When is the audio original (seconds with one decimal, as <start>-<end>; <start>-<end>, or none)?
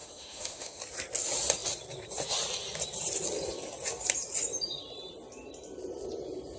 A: 0.8-6.6